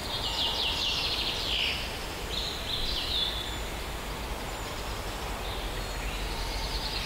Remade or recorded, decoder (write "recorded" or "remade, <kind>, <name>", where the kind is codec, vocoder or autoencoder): recorded